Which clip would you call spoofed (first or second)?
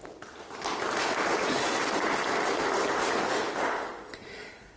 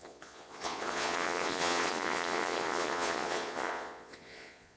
second